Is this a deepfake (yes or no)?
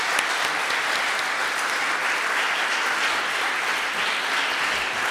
no